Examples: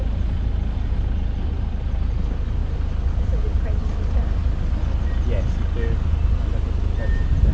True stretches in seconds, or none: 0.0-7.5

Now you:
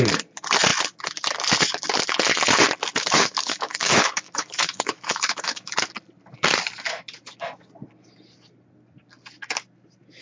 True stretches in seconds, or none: 0.0-2.9; 5.7-10.2

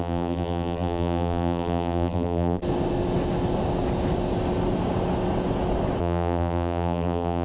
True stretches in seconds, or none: 2.6-6.0